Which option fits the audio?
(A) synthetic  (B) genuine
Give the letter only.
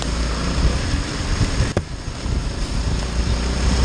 B